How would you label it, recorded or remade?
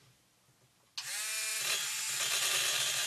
recorded